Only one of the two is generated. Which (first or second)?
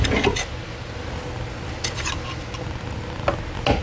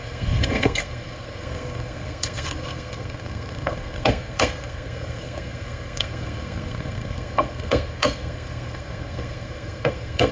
second